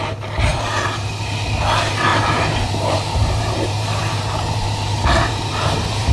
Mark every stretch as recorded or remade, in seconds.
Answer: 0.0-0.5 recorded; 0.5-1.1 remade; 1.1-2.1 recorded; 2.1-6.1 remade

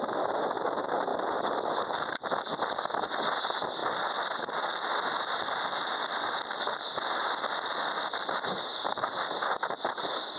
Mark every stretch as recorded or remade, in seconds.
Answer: 0.0-10.4 recorded

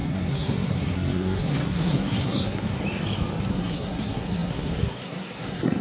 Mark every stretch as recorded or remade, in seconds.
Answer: 0.0-2.8 remade; 2.8-3.5 recorded; 3.5-5.8 remade

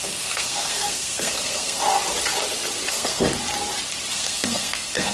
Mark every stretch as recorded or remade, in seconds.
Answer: 0.0-1.8 remade; 1.8-2.9 recorded; 2.9-3.3 remade; 3.3-4.1 recorded; 4.1-5.1 remade